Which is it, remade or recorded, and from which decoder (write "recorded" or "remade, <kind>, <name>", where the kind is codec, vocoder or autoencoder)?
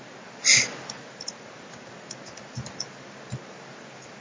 recorded